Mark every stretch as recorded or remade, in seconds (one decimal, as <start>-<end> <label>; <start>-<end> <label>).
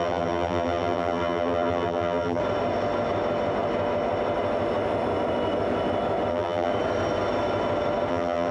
0.0-2.4 remade; 2.4-6.3 recorded; 6.3-6.7 remade; 6.7-8.1 recorded; 8.1-8.5 remade